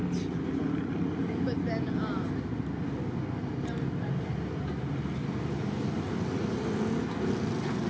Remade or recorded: recorded